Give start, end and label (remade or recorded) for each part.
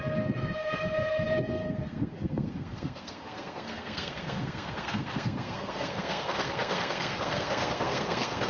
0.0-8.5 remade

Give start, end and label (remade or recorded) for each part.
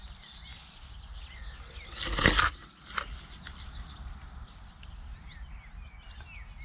0.0-6.6 recorded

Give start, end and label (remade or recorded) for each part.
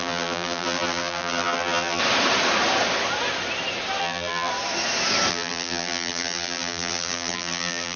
0.0-2.0 remade; 2.0-4.0 recorded; 4.0-4.5 remade; 4.5-5.3 recorded; 5.3-8.0 remade